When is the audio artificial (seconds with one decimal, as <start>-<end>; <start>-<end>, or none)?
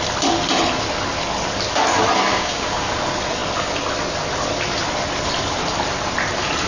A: 2.3-2.8